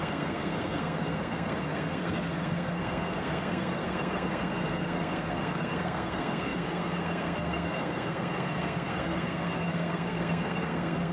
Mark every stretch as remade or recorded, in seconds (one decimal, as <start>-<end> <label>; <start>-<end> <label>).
0.0-11.1 remade